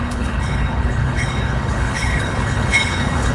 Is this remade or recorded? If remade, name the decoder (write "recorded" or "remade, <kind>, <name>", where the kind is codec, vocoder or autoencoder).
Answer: remade, codec, HILCodec